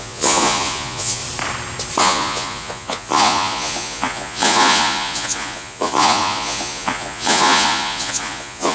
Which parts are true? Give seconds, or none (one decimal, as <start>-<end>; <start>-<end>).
1.2-2.0